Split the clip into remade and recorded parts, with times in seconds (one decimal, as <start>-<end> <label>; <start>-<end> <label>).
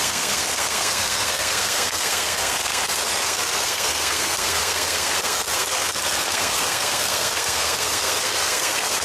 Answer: 0.0-9.0 remade